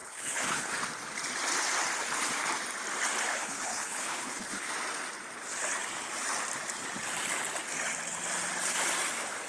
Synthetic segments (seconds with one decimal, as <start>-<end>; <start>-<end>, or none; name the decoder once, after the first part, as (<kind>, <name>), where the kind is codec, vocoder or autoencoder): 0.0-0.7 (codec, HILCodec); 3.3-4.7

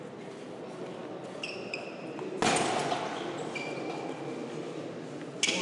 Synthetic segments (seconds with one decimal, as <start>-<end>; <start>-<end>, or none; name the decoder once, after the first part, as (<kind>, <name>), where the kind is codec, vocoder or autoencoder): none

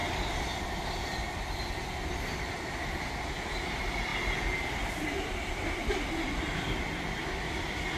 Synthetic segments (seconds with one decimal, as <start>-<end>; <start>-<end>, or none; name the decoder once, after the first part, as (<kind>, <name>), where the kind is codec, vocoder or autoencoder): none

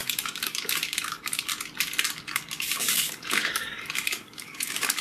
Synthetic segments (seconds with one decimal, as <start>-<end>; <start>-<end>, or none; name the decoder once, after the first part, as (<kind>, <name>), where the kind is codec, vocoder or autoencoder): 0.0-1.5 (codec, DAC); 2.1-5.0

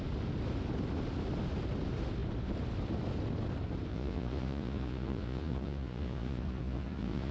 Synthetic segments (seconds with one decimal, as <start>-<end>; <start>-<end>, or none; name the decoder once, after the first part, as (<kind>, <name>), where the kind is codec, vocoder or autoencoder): 3.9-7.3 (vocoder, Vocos)

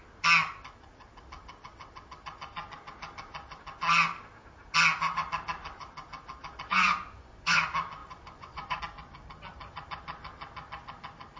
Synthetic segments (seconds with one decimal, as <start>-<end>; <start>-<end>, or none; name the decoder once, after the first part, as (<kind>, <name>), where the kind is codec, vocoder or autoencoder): 6.7-7.6 (vocoder, Vocos); 8.0-8.8